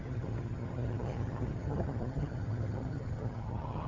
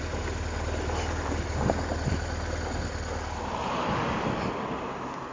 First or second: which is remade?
first